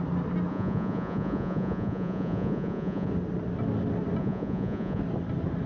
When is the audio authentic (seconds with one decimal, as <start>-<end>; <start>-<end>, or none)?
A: 0.0-0.5; 3.1-4.2; 5.0-5.7